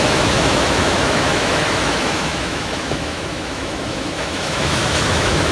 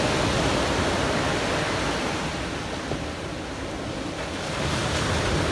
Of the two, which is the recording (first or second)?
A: second